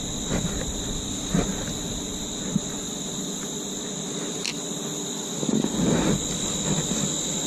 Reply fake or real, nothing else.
real